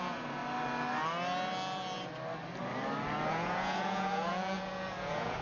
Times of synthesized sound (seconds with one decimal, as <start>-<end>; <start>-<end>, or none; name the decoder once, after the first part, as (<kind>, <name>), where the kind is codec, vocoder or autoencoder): 0.0-0.4 (vocoder, Vocos); 3.3-5.4